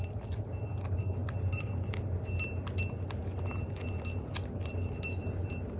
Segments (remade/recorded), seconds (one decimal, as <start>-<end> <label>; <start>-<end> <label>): 0.0-5.8 recorded